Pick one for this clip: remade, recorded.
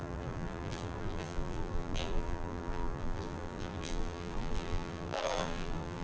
remade